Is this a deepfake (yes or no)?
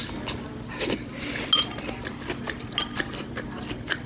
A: no